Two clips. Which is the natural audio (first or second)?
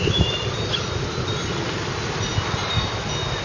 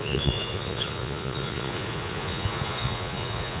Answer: first